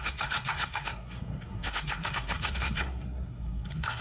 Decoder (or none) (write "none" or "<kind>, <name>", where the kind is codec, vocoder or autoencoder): codec, SNAC